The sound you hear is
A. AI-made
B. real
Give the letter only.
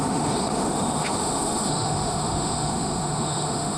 A